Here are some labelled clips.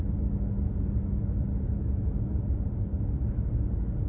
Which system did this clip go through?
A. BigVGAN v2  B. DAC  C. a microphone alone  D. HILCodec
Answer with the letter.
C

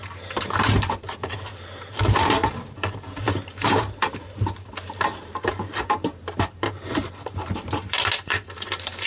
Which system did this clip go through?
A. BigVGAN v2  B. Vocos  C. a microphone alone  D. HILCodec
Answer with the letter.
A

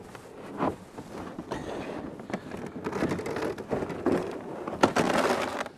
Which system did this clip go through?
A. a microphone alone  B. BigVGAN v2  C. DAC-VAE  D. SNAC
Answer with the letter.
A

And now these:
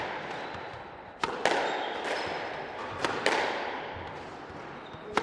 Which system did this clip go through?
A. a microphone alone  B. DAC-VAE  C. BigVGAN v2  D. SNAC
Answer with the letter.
A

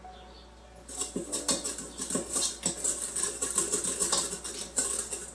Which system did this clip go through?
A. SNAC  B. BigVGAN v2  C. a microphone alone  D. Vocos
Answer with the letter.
C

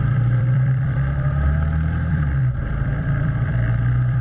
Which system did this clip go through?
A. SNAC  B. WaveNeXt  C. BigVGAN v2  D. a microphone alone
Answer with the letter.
C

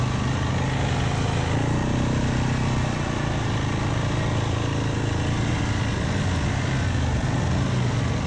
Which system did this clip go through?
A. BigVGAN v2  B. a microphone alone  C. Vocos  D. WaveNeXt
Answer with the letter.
B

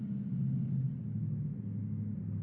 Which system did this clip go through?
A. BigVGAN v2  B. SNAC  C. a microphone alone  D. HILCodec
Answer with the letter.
C